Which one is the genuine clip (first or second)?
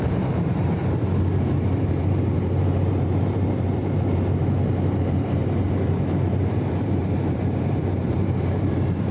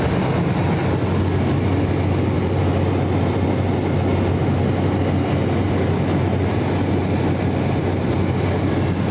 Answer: second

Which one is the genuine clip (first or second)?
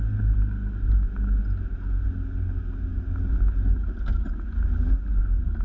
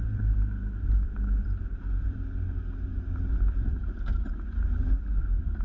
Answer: first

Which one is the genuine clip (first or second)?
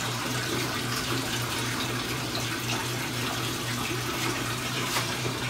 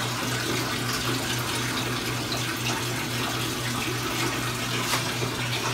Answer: second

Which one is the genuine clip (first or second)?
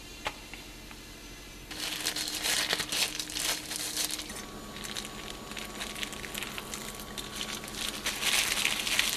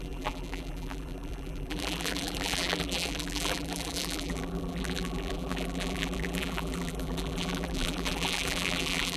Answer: first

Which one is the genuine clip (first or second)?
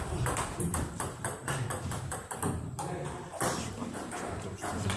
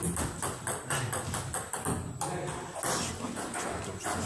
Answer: second